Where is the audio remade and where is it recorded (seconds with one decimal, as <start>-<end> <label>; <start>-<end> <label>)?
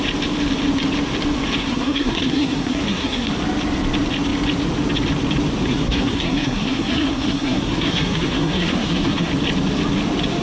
0.0-1.6 recorded; 1.6-3.3 remade; 3.3-5.7 recorded; 5.7-9.3 remade; 9.3-10.4 recorded